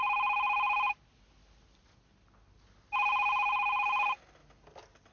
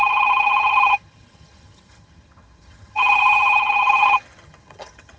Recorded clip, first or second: first